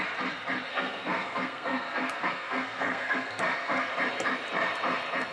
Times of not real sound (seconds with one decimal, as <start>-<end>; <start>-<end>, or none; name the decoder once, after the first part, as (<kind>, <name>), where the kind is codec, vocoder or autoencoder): 0.7-3.9 (codec, SNAC)